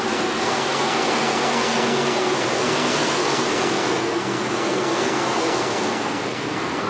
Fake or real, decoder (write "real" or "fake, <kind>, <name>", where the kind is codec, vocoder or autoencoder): fake, codec, SNAC